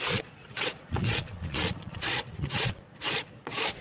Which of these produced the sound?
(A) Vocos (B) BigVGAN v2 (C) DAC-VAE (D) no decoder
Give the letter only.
A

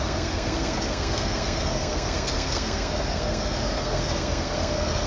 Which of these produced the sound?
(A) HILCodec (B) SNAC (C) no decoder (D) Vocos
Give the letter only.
B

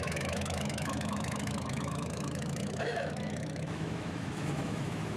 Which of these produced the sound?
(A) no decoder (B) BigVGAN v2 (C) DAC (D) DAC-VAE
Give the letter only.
D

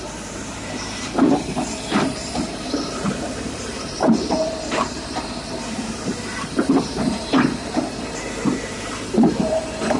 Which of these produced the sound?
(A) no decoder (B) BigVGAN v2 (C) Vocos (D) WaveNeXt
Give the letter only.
B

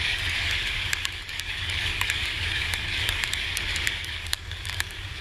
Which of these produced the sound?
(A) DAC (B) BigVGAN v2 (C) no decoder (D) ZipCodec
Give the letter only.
A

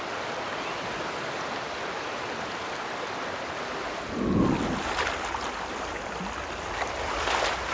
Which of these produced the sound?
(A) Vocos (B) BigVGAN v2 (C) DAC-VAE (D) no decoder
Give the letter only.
D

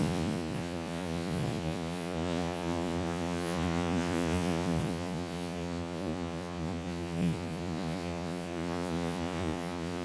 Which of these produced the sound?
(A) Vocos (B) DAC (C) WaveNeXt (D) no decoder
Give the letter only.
A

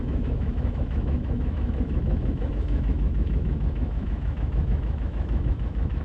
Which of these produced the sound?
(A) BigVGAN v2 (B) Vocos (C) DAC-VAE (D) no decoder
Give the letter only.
C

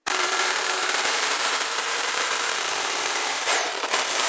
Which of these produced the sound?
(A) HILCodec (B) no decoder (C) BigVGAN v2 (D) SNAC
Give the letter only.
C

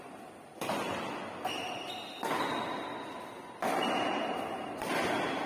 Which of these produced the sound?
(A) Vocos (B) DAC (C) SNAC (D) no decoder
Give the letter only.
D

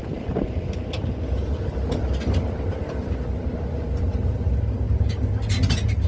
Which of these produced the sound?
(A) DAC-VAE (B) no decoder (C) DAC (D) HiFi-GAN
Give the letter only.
B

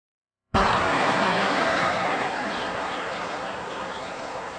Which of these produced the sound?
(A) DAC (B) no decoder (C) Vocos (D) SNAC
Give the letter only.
D